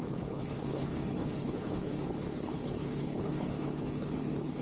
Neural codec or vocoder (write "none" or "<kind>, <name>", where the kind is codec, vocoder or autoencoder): codec, HILCodec